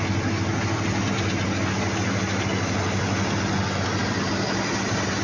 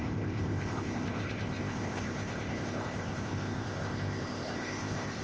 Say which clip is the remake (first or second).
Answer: second